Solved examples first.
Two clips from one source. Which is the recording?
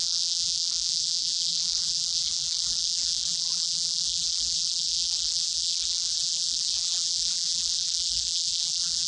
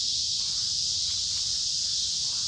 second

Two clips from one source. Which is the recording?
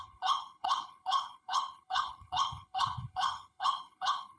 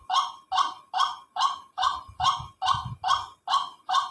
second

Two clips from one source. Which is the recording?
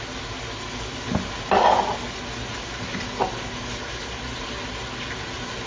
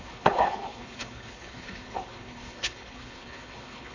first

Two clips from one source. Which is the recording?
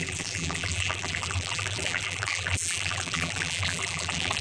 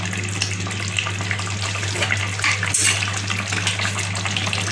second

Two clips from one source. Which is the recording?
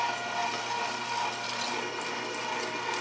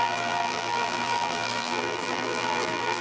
first